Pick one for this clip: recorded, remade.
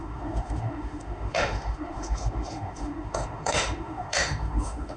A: remade